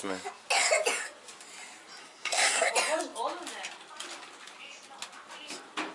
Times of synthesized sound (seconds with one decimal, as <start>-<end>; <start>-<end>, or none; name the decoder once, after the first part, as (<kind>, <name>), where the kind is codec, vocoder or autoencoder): 2.0-2.7 (codec, SNAC)